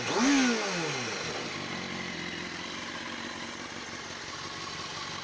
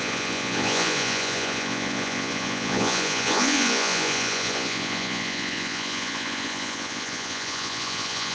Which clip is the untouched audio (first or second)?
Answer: first